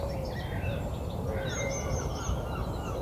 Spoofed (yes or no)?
no